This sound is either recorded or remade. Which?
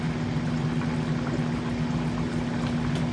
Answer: recorded